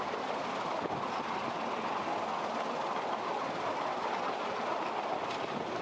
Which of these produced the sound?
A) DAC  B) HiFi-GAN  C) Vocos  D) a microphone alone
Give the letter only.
D